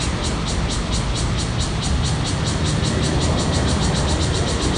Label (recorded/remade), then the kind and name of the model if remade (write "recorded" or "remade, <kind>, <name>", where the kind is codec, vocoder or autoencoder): recorded